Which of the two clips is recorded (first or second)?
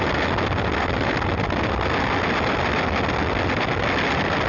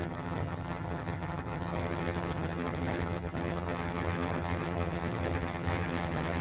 first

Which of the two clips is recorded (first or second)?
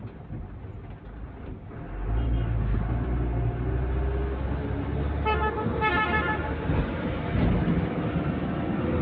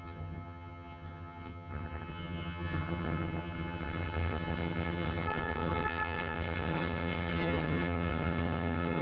first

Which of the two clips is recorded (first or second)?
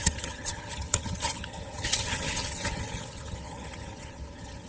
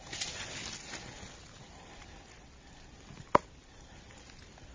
second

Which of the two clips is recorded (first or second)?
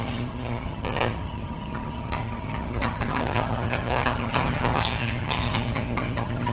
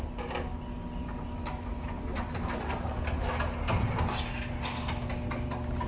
second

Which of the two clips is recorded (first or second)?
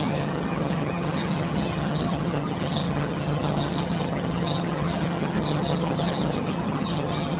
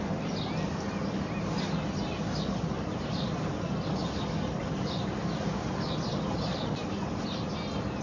second